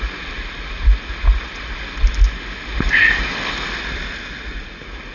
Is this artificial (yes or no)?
no